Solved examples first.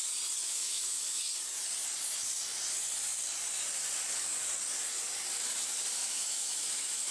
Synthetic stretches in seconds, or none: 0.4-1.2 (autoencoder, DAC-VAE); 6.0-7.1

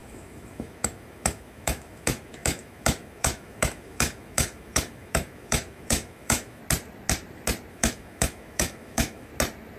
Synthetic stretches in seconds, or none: 0.0-6.6 (autoencoder, DAC-VAE); 7.7-9.3

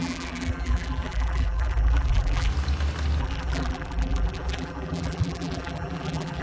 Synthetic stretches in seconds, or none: 0.0-2.5 (vocoder, BigVGAN v2); 3.2-6.4

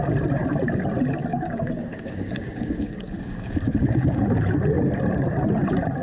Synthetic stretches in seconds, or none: 1.3-4.2 (codec, DAC)

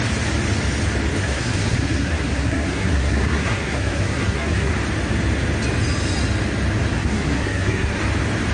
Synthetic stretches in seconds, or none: 1.2-4.7 (codec, SNAC); 6.9-8.0

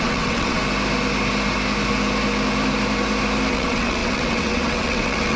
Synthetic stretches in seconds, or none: 0.0-0.6 (vocoder, WaveNeXt); 3.5-5.4

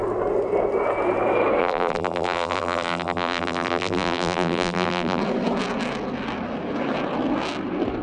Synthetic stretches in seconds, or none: 1.6-5.2 (vocoder, BigVGAN v2)